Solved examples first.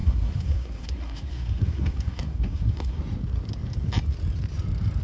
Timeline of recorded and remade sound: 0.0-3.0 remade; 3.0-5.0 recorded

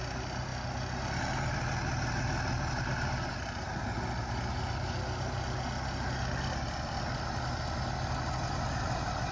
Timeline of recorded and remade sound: 0.0-9.3 recorded

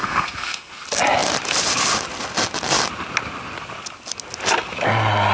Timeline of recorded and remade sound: 0.0-0.7 remade; 0.7-5.3 recorded

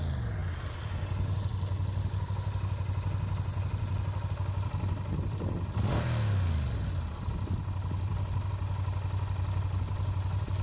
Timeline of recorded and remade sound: 0.0-10.6 recorded

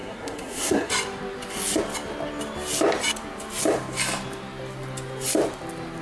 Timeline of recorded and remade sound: 0.0-0.9 remade; 0.9-6.0 recorded